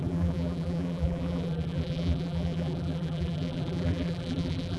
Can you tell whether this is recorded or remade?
remade